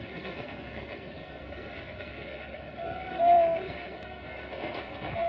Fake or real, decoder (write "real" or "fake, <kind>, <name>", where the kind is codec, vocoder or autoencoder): fake, codec, SNAC